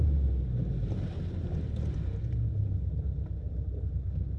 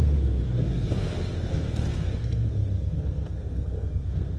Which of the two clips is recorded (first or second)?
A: first